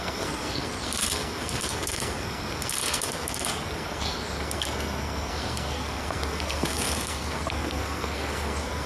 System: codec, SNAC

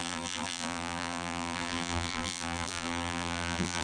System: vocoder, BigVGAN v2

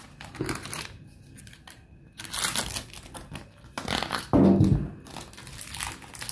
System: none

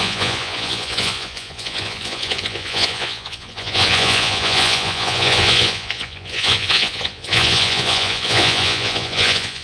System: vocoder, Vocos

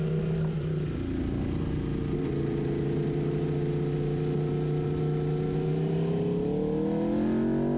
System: none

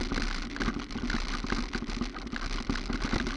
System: none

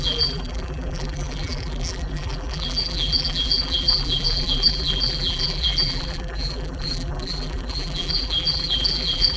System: vocoder, BigVGAN v2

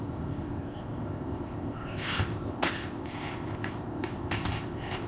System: codec, ZipCodec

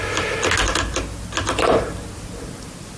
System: none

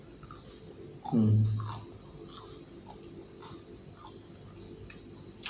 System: none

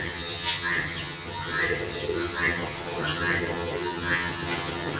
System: vocoder, HiFi-GAN